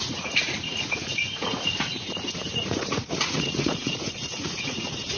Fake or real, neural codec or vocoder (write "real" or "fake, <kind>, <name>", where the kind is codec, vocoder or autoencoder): fake, vocoder, Vocos